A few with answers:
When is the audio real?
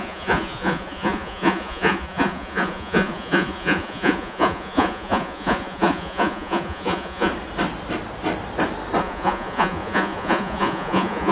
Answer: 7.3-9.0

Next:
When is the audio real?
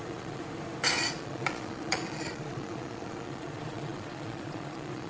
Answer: 0.4-1.1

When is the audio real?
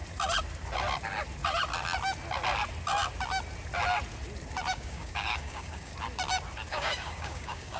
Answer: 0.0-4.7; 5.9-6.7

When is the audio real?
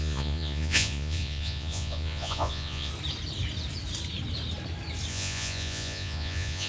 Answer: 2.9-5.1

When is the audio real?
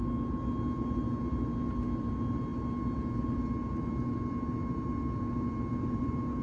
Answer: 0.0-6.4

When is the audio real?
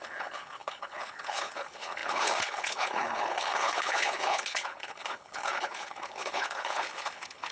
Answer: none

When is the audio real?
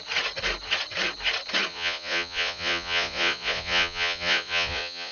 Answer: 0.0-1.7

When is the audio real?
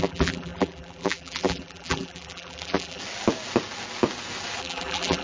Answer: 3.0-4.6